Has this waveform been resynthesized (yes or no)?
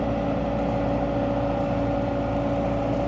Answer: no